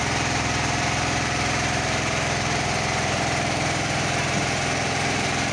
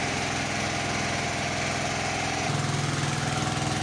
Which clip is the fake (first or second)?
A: first